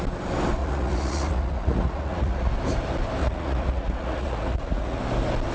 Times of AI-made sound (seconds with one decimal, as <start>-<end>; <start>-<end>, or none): 0.6-2.5; 3.2-5.0